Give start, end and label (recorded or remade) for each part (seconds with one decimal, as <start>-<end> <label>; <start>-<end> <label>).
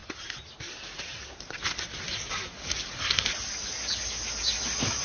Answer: 0.0-3.0 remade; 3.0-5.0 recorded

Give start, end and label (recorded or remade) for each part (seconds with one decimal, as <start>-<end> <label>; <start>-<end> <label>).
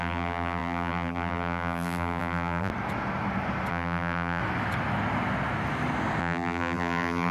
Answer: 0.0-2.7 remade; 2.7-3.7 recorded; 3.7-4.4 remade; 4.4-6.2 recorded; 6.2-7.3 remade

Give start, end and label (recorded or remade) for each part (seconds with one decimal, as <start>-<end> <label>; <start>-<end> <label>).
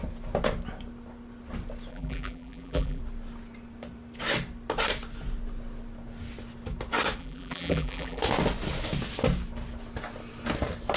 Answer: 0.0-1.9 recorded; 1.9-3.0 remade; 3.0-7.2 recorded; 7.2-8.2 remade; 8.2-11.0 recorded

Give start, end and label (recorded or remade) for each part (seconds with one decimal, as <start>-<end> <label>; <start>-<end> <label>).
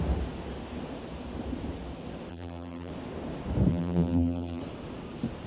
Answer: 0.0-2.3 recorded; 2.3-2.9 remade; 2.9-3.7 recorded; 3.7-4.6 remade; 4.6-5.5 recorded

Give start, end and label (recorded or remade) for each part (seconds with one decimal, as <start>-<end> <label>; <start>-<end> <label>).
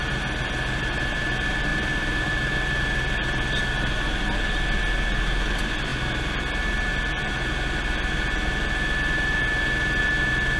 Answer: 0.0-1.7 recorded; 1.7-2.3 remade; 2.3-10.6 recorded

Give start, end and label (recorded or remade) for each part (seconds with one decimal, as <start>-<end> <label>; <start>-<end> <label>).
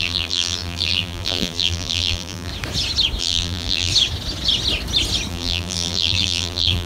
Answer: 0.0-2.5 remade; 2.5-3.2 recorded; 3.2-3.9 remade; 3.9-5.3 recorded; 5.3-6.9 remade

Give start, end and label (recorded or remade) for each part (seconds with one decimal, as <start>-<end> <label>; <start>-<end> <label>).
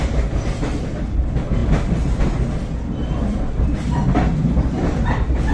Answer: 0.0-5.5 recorded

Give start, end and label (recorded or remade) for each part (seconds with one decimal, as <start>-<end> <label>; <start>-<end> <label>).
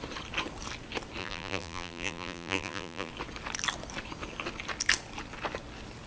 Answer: 0.0-1.2 recorded; 1.2-3.1 remade; 3.1-6.1 recorded